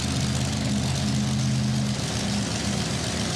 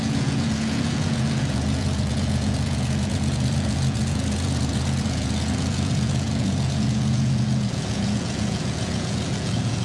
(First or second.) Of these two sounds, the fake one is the second